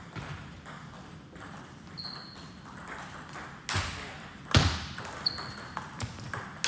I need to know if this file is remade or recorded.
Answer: recorded